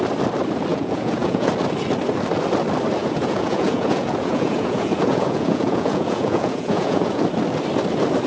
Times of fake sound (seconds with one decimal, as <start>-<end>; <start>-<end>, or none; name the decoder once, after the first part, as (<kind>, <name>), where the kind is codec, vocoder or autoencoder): 0.7-1.5 (vocoder, Vocos); 3.0-7.2